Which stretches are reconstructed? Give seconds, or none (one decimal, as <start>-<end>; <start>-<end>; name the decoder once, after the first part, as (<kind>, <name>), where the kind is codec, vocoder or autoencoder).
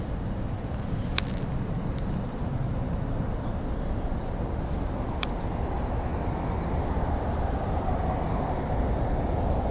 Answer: none